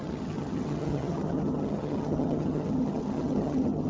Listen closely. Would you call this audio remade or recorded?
remade